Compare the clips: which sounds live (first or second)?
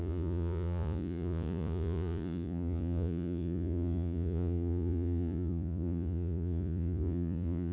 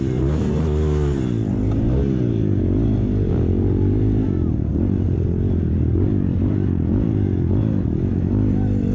second